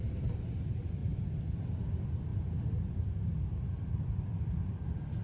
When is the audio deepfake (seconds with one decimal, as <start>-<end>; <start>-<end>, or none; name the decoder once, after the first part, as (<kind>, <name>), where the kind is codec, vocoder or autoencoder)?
2.3-5.2 (vocoder, BigVGAN v2)